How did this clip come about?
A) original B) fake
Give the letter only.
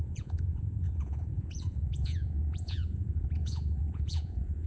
B